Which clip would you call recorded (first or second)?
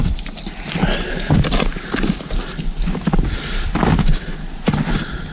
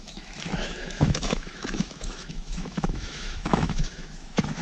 first